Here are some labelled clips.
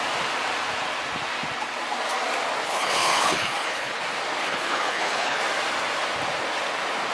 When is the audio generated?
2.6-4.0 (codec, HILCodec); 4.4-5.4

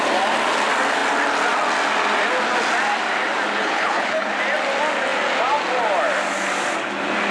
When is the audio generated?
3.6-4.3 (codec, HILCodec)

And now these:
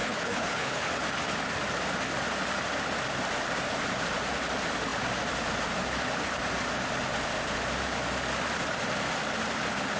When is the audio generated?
0.0-0.9 (codec, HILCodec)

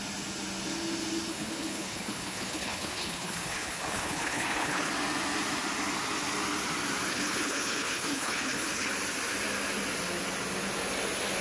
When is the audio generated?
1.3-4.9 (codec, HILCodec); 7.1-8.9

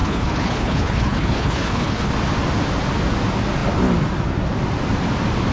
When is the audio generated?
0.0-2.1 (codec, HILCodec)